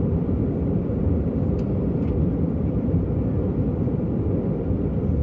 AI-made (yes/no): yes